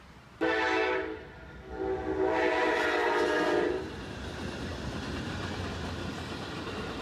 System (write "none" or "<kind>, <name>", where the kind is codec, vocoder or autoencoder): none